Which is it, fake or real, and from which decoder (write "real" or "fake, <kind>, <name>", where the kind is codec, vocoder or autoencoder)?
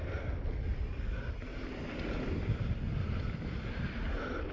real